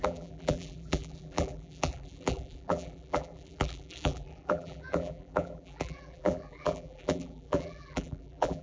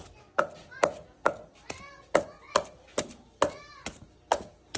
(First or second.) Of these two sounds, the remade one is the first